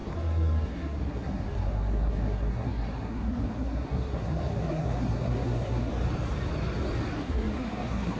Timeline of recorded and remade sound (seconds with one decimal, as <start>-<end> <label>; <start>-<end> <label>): 0.0-5.9 remade; 5.9-7.2 recorded; 7.2-8.2 remade